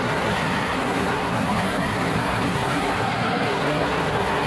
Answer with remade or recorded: remade